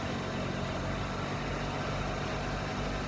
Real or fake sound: real